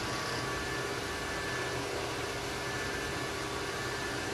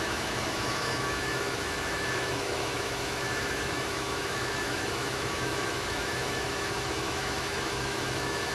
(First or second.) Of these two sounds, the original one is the first